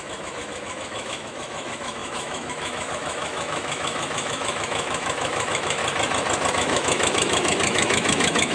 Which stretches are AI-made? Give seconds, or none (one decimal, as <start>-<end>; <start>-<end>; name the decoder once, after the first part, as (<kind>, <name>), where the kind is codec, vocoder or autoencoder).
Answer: 0.0-5.8 (autoencoder, DAC-VAE); 6.5-8.5